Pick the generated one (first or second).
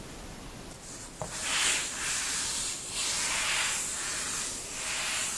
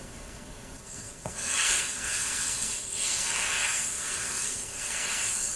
second